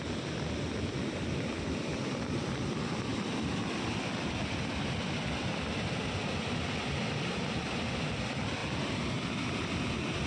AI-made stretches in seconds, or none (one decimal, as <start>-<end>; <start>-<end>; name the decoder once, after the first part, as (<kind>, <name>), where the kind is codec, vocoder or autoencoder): none